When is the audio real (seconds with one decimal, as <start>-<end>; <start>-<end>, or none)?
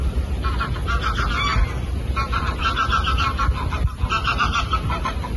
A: 0.0-5.4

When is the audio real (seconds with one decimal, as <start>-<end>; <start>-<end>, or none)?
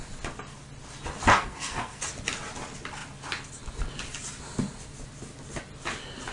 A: 0.0-1.3; 2.0-6.3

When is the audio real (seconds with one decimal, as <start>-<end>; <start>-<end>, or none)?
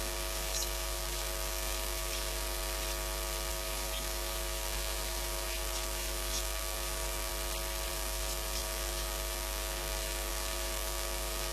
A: 2.6-3.5; 7.3-7.9